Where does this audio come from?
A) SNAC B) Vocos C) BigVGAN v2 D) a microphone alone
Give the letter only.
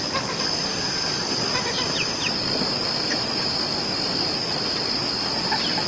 D